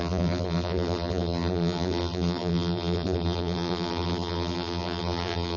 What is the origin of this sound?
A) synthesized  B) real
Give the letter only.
A